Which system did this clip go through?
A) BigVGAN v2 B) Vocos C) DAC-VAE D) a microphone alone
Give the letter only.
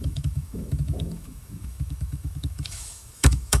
C